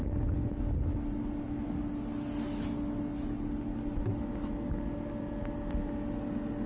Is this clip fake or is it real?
real